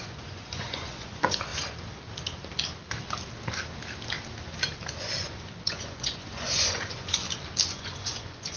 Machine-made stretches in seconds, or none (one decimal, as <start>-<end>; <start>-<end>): 0.0-1.5; 5.0-7.2; 7.7-8.6